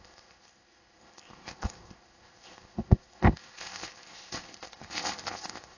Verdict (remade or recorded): remade